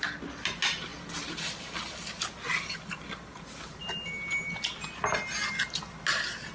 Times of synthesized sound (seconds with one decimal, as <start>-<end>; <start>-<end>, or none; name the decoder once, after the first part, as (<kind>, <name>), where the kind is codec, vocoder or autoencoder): none

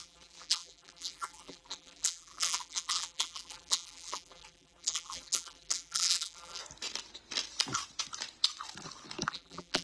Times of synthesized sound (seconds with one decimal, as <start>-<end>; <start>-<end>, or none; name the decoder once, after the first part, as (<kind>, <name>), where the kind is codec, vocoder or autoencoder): 0.0-6.6 (vocoder, BigVGAN v2); 9.3-9.8

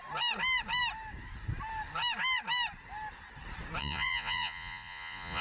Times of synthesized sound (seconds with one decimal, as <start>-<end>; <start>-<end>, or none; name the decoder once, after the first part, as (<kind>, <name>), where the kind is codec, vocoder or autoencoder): 3.8-5.4 (vocoder, Vocos)

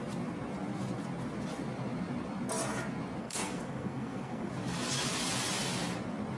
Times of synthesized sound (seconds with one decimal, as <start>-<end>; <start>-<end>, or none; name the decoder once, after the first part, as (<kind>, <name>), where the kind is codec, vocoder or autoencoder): 3.2-4.5 (codec, SNAC)

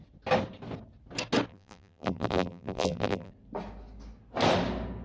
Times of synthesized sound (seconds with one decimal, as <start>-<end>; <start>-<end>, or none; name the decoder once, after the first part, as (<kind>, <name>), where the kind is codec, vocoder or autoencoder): 1.5-3.3 (vocoder, BigVGAN v2)

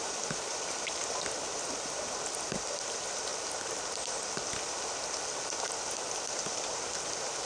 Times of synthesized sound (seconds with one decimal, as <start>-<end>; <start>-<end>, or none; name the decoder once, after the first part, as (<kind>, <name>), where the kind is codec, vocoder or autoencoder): none

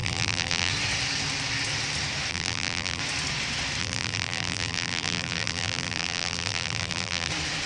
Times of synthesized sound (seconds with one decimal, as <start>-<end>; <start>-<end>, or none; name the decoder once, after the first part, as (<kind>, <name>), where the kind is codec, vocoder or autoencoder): 0.0-0.7 (vocoder, BigVGAN v2); 2.3-3.0; 3.8-7.3